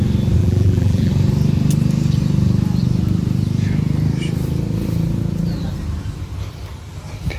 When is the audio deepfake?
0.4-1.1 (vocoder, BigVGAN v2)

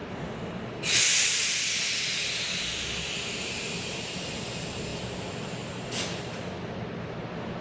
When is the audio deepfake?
none

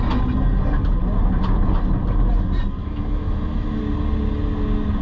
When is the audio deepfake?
2.8-3.8 (autoencoder, DAC-VAE)

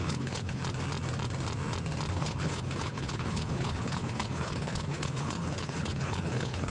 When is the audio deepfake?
0.0-0.6 (codec, HILCodec); 2.1-6.7

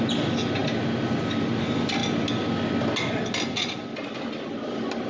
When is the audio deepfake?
none